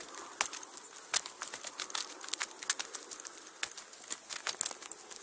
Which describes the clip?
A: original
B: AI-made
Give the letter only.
A